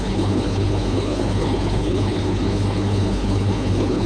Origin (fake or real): fake